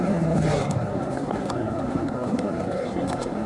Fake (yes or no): yes